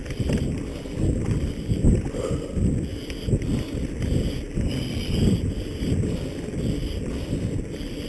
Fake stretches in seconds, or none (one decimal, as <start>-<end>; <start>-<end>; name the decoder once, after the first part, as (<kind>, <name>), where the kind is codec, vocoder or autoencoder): 0.0-2.5 (vocoder, BigVGAN v2)